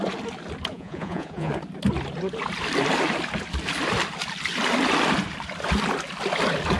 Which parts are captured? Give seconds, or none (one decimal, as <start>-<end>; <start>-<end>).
0.0-0.7; 1.5-6.8